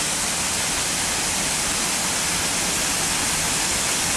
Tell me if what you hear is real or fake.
real